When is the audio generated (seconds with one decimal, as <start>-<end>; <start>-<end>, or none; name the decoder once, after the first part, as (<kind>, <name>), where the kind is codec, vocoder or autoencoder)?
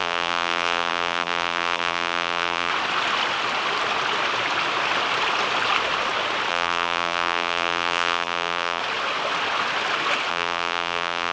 0.0-2.7 (vocoder, BigVGAN v2); 6.5-8.8; 10.3-11.3